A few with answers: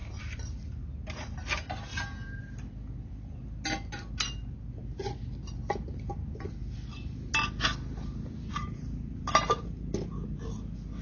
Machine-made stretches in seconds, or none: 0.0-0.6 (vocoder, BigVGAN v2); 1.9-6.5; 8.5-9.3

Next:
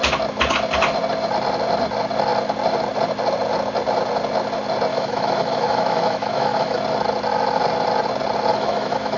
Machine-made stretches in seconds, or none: 4.9-6.8 (autoencoder, DAC-VAE); 8.5-9.2

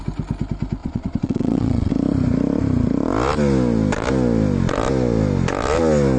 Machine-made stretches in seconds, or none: 0.8-1.9 (vocoder, WaveNeXt)

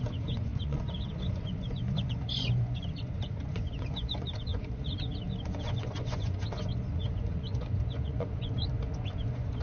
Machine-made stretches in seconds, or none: 0.0-9.6 (vocoder, Vocos)

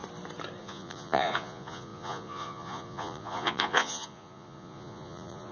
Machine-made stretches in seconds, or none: 0.6-5.5 (vocoder, Vocos)

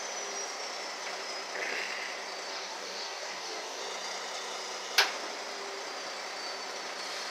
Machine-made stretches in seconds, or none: 2.5-3.8 (codec, DAC)